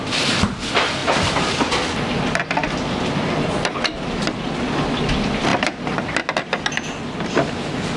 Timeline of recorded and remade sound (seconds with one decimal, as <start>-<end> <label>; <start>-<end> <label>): 0.0-8.0 recorded